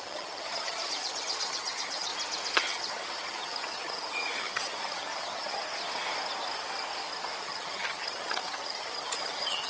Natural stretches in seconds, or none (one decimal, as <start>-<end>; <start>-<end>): 2.1-2.6; 5.6-7.4